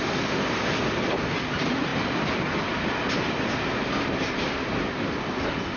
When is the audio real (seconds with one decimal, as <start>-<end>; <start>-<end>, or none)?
0.0-5.8